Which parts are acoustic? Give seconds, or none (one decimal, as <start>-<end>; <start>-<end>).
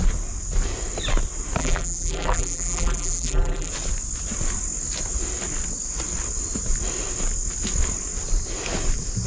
0.0-1.6; 3.7-9.3